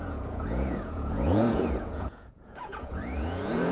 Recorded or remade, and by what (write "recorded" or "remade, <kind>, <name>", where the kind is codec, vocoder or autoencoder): remade, vocoder, Vocos